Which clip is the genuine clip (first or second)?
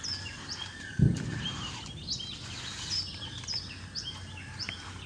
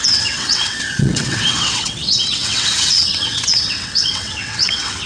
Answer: first